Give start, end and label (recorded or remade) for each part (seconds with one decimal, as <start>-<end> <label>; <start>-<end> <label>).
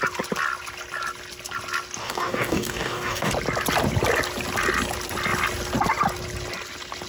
0.0-2.0 recorded; 2.0-3.3 remade; 3.3-7.1 recorded